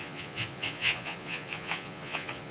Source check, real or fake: fake